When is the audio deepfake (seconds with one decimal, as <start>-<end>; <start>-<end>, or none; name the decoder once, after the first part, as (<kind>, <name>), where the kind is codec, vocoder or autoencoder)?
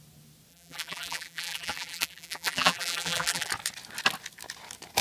0.5-3.5 (vocoder, BigVGAN v2)